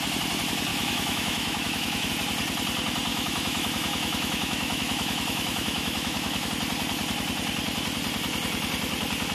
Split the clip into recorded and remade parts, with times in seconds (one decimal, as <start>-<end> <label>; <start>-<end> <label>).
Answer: 0.0-0.7 recorded; 0.7-2.1 remade; 2.1-3.1 recorded; 3.1-6.5 remade; 6.5-9.3 recorded